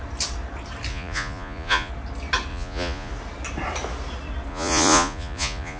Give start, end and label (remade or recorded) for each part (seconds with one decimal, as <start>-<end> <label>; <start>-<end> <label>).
0.0-0.9 recorded; 0.9-1.9 remade; 1.9-2.5 recorded; 2.5-3.1 remade; 3.1-4.5 recorded; 4.5-5.8 remade